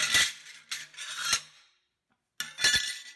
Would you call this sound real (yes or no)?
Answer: yes